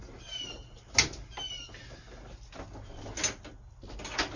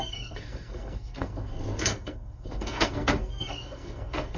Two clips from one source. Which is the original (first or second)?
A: first